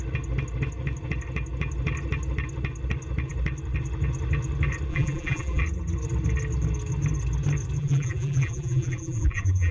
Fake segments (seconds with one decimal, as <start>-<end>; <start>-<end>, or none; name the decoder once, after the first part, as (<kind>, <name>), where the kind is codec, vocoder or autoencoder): 4.9-5.6 (vocoder, BigVGAN v2); 7.8-9.7